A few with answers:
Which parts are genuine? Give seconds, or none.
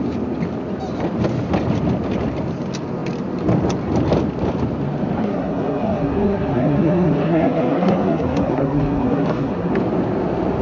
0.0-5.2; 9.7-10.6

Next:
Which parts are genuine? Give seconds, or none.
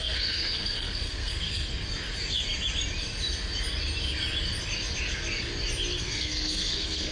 1.7-6.0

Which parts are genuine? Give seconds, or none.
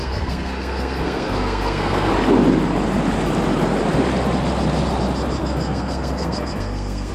2.1-5.4